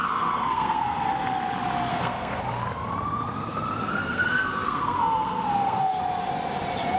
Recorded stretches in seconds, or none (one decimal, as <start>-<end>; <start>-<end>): 1.1-1.9; 2.4-3.8; 6.0-7.0